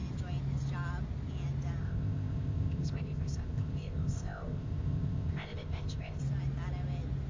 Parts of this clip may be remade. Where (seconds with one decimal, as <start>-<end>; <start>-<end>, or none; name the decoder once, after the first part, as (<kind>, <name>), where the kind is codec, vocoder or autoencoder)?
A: 1.8-6.2 (codec, ZipCodec)